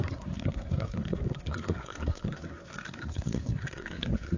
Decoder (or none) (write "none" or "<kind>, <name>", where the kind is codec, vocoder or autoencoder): codec, SNAC